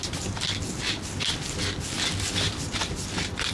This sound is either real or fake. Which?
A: real